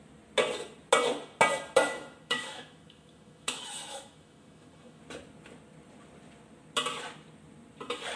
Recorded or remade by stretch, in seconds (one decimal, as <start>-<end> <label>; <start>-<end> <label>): 0.0-1.8 recorded; 1.8-5.0 remade; 5.0-8.2 recorded